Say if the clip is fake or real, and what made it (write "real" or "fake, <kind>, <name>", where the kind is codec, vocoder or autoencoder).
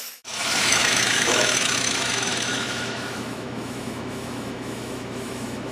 fake, autoencoder, DAC-VAE